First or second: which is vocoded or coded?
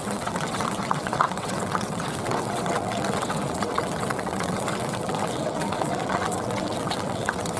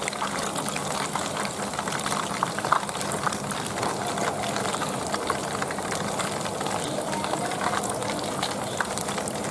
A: first